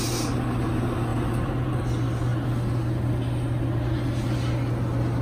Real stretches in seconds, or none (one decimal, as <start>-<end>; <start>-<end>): 0.0-1.1; 1.7-5.2